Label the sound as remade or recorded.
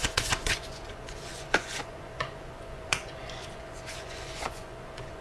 remade